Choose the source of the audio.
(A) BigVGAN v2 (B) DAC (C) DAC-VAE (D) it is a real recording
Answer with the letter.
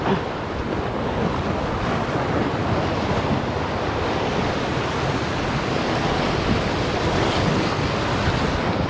D